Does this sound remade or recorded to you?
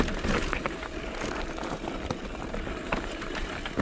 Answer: recorded